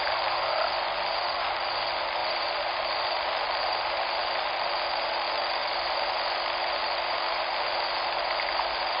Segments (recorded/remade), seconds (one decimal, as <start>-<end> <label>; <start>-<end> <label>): 0.0-2.2 recorded; 2.2-4.6 remade; 4.6-5.6 recorded; 5.6-6.3 remade; 6.3-9.0 recorded